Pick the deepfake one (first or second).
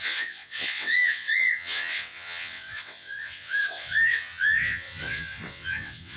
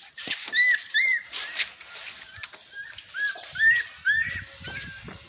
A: first